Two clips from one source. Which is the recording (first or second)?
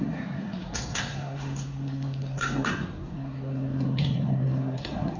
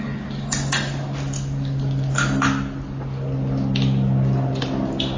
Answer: second